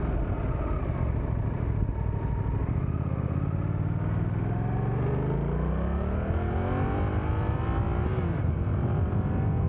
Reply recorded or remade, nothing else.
recorded